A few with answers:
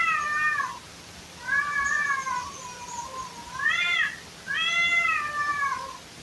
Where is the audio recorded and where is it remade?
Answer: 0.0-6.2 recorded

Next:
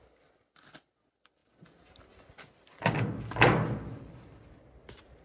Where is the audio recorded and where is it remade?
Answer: 0.0-5.2 recorded